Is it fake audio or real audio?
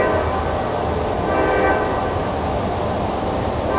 real